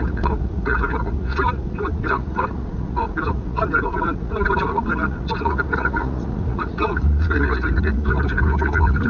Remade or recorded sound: remade